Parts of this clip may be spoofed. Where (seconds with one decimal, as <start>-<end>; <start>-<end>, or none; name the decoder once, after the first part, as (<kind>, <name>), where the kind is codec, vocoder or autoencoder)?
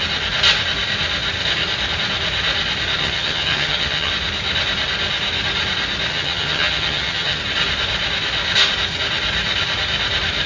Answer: 3.0-4.1 (vocoder, HiFi-GAN); 6.1-7.4